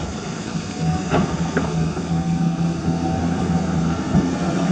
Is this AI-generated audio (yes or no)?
yes